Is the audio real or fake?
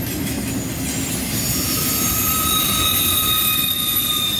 real